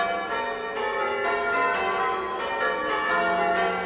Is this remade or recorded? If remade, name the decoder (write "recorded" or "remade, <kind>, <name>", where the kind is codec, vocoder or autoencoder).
recorded